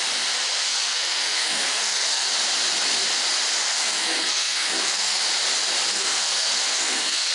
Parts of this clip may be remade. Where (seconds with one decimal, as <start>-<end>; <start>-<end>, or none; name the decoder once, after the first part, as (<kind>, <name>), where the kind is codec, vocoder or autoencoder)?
0.7-2.3 (codec, SNAC); 3.7-5.2; 5.9-7.3